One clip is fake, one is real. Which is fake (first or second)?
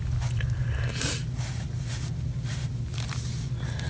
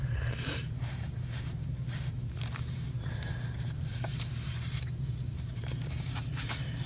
second